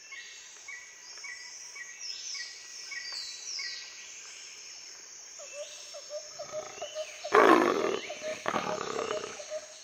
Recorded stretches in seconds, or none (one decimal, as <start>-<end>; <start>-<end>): 0.0-8.3; 9.4-9.8